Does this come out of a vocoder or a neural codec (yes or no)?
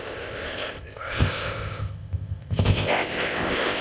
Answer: yes